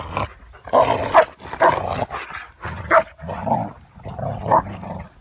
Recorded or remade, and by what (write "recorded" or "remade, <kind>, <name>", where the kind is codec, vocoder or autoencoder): recorded